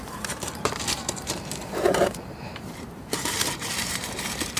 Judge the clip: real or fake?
fake